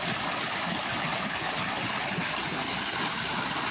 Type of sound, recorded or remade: recorded